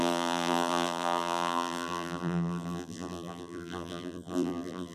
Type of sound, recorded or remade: remade